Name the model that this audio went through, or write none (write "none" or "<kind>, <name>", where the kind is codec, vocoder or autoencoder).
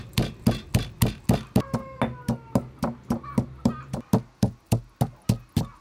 none